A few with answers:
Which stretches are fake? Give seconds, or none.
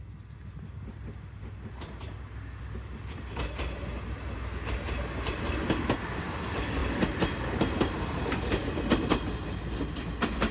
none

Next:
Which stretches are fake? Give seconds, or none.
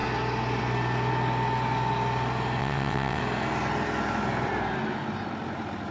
2.6-3.2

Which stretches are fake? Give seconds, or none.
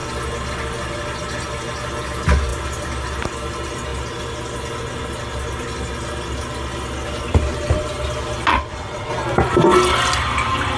8.5-9.1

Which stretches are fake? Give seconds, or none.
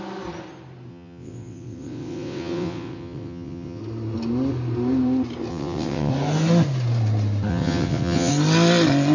0.9-3.8; 5.5-6.1; 7.5-8.3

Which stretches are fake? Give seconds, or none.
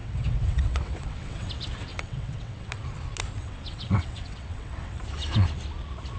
0.0-1.5; 1.9-2.8; 3.4-5.0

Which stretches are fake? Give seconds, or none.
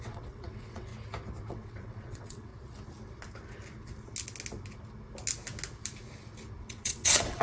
0.0-0.9; 1.5-2.5; 6.6-7.4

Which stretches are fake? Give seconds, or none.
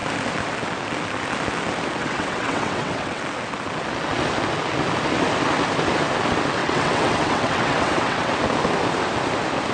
2.0-3.2; 6.6-8.3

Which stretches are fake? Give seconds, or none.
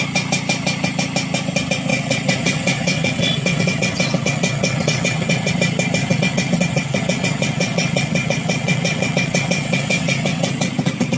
1.9-5.5; 6.0-11.2